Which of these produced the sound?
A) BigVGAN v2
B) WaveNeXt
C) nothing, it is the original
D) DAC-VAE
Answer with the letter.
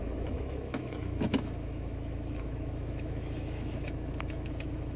D